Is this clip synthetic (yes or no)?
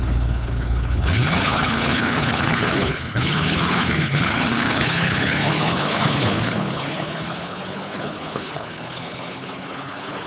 yes